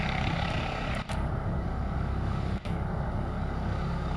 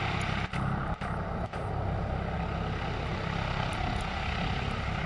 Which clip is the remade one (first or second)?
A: first